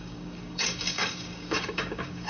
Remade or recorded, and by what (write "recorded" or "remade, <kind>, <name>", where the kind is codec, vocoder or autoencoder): remade, codec, DAC